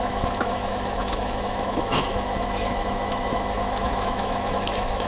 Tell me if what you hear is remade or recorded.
remade